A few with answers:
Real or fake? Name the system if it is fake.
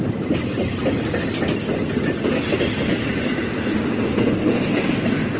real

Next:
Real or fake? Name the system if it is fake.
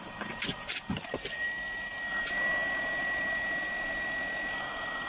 real